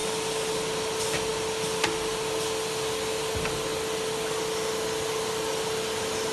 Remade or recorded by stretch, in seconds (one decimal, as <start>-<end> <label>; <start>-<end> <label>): 0.0-6.3 recorded